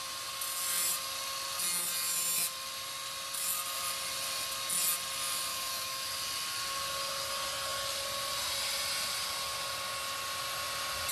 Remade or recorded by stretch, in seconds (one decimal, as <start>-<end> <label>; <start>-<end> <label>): 0.0-5.5 recorded; 5.5-6.1 remade; 6.1-11.1 recorded